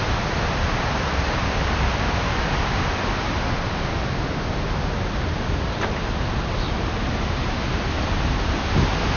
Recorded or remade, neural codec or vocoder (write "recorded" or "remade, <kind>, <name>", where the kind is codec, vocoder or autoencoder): recorded